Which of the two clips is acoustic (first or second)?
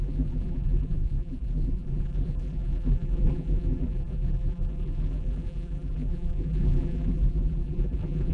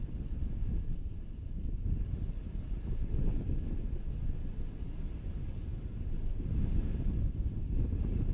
second